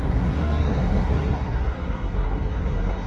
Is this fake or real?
fake